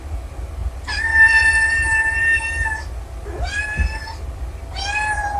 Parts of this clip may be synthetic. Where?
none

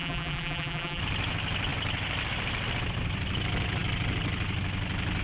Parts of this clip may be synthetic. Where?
0.0-1.0 (vocoder, BigVGAN v2)

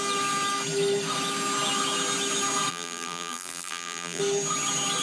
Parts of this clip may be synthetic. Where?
2.7-4.2 (vocoder, BigVGAN v2)